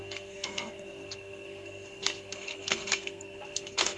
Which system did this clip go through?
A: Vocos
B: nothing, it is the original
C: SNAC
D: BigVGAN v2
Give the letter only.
C